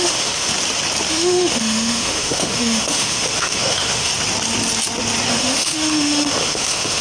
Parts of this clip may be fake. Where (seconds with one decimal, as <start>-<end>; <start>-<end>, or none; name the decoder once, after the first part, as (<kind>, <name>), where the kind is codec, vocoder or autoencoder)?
0.0-0.5 (autoencoder, DAC-VAE); 1.1-4.1; 5.3-7.0